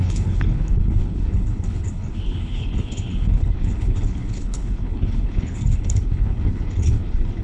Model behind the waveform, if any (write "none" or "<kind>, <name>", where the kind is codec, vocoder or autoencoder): codec, HILCodec